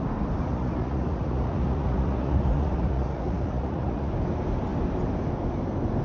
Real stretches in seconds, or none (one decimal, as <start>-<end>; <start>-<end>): 0.0-0.5; 4.1-6.0